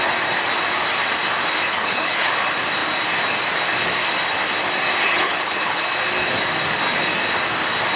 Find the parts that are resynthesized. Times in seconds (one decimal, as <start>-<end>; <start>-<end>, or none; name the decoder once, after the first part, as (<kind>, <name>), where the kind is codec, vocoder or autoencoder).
1.7-2.3 (codec, HILCodec); 5.0-5.8